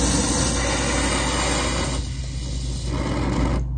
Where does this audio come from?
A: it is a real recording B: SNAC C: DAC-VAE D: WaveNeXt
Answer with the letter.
A